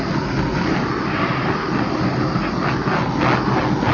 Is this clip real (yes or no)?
yes